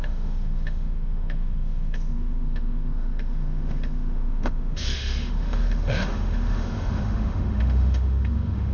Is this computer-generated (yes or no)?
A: yes